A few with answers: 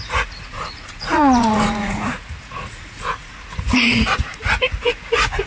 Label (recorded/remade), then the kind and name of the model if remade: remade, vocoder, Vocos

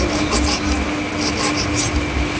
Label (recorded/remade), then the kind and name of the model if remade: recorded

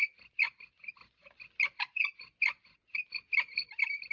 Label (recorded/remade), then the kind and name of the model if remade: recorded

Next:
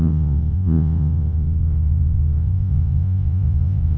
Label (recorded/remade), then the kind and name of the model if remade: remade, vocoder, Vocos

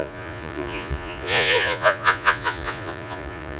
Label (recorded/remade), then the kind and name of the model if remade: remade, vocoder, Vocos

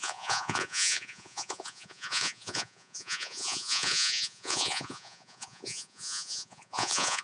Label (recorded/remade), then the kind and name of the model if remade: remade, vocoder, Vocos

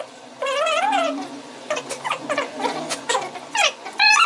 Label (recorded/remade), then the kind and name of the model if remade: remade, vocoder, Vocos